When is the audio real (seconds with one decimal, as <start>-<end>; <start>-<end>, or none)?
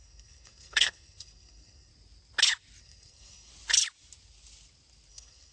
1.9-2.8; 3.5-5.1